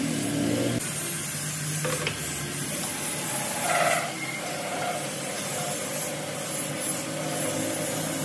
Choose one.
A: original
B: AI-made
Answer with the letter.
A